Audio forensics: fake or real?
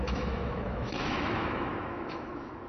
fake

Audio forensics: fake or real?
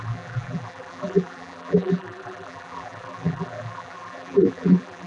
fake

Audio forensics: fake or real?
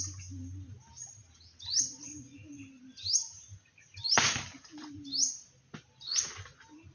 real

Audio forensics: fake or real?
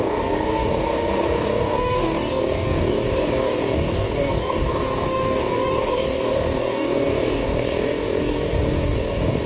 fake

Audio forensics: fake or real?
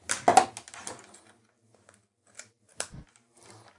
real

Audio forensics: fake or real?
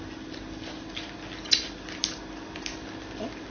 real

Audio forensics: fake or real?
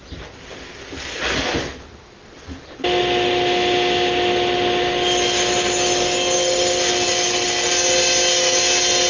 real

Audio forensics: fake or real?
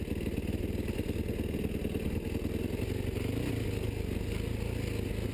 real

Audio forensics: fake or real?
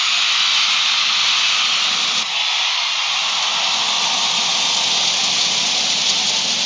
real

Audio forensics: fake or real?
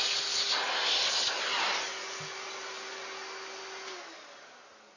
real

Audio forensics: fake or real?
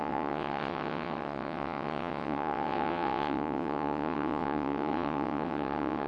fake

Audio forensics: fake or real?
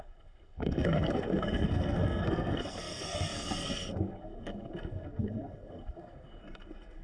fake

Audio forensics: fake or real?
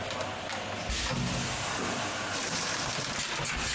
real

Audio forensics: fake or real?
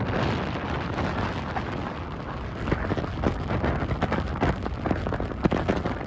real